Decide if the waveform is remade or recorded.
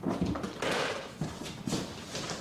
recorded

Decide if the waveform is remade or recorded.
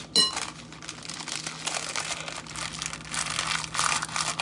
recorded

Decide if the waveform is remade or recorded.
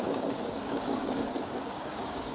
remade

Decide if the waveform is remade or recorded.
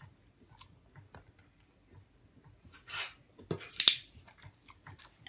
recorded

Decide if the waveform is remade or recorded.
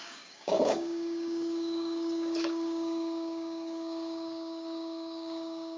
remade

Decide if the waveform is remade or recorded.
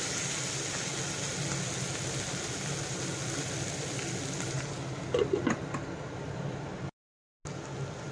recorded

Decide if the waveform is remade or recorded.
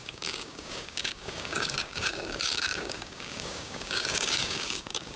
remade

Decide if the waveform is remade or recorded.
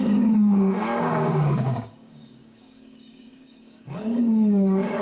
remade